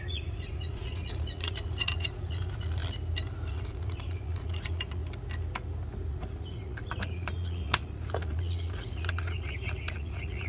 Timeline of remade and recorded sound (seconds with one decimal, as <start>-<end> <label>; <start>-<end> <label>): 0.0-2.8 remade; 2.8-3.5 recorded; 3.5-5.0 remade; 5.0-6.1 recorded; 6.1-10.5 remade